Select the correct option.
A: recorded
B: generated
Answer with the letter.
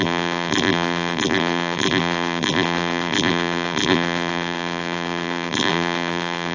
B